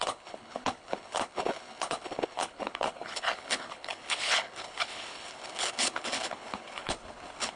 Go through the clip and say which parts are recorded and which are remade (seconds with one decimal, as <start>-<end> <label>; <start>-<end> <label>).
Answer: 0.0-7.6 remade